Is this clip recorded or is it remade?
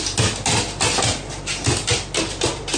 recorded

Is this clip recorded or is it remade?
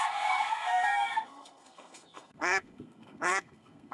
remade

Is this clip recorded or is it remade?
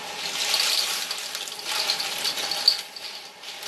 recorded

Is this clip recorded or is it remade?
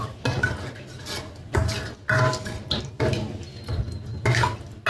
recorded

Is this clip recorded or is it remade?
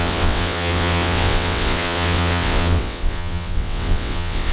remade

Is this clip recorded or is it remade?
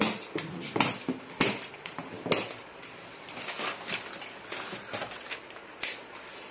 recorded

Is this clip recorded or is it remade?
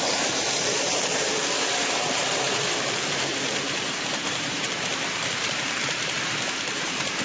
remade